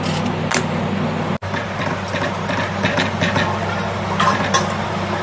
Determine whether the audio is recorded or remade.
recorded